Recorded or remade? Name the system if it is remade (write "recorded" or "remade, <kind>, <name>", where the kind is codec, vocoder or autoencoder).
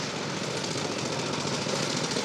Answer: recorded